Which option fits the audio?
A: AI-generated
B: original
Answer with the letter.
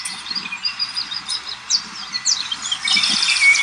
A